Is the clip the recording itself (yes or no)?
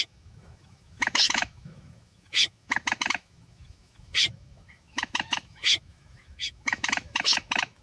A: no